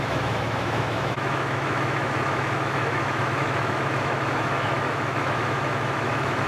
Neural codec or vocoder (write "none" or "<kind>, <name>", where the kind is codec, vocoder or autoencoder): autoencoder, DAC-VAE